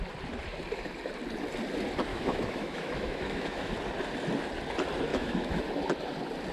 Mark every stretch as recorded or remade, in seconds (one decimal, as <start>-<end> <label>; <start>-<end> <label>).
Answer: 0.0-2.1 recorded; 2.1-3.7 remade; 3.7-5.1 recorded; 5.1-5.6 remade; 5.6-6.5 recorded